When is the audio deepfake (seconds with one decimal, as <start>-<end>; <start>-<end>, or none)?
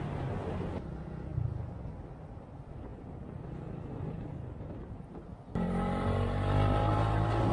none